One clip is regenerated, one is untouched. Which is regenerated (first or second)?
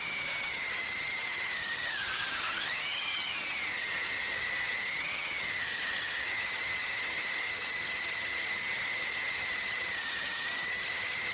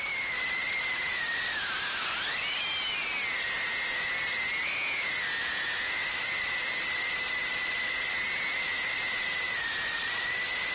first